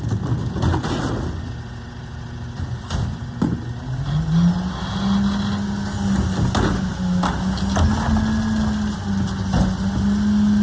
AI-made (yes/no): no